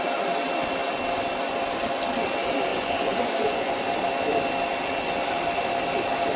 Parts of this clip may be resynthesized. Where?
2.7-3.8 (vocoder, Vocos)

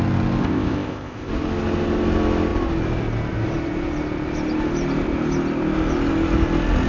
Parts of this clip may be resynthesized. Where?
0.4-1.3 (codec, ZipCodec)

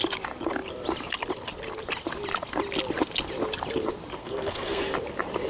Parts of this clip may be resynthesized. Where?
4.2-4.8 (codec, SNAC)

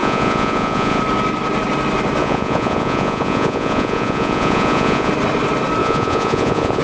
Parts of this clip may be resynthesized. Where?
0.0-1.0 (vocoder, Vocos); 2.2-5.1; 5.8-6.8

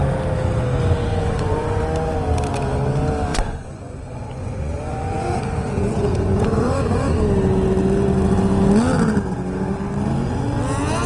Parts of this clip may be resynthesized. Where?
1.1-1.8 (vocoder, Vocos); 3.3-7.2

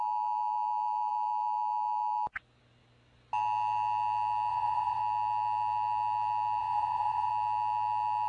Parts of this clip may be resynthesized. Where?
4.5-5.0 (vocoder, Vocos); 6.6-7.3

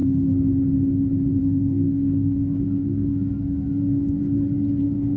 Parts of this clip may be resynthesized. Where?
1.4-4.2 (codec, SNAC); 4.8-5.2

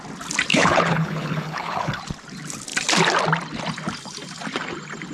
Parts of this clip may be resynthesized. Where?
0.5-2.0 (codec, HILCodec)